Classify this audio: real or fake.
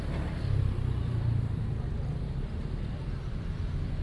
fake